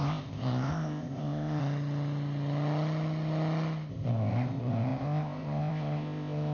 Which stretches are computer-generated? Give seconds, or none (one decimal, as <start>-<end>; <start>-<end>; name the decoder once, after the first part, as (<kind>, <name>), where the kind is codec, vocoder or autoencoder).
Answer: 0.0-1.6 (codec, ZipCodec); 3.9-6.5